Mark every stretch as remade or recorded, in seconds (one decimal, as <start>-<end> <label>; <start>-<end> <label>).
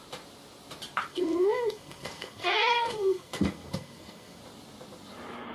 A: 0.0-1.1 recorded; 1.1-4.4 remade; 4.4-5.5 recorded